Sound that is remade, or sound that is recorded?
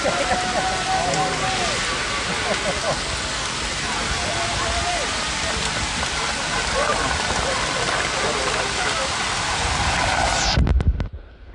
recorded